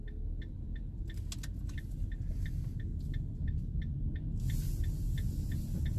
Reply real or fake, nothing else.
real